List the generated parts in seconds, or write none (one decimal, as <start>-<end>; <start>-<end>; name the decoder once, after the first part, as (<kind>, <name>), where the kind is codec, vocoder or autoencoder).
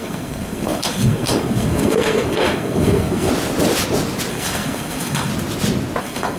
0.0-3.3 (codec, SNAC); 4.3-5.3; 6.0-6.4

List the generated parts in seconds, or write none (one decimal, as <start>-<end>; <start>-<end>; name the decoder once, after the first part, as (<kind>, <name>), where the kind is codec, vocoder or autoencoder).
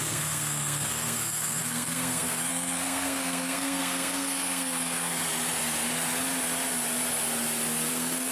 0.0-5.2 (codec, SNAC); 7.9-8.3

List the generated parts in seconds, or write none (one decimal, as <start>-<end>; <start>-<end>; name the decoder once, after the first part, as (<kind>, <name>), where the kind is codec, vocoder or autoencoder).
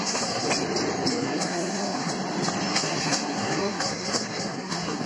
0.0-0.5 (codec, SNAC); 1.1-2.1; 2.7-5.1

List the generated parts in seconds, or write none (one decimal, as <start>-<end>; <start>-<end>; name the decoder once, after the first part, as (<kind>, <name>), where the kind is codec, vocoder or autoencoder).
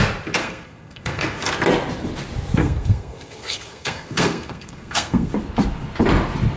0.4-1.5 (codec, SNAC); 2.6-5.3